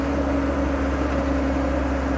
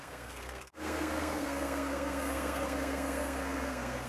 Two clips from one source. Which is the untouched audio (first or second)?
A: first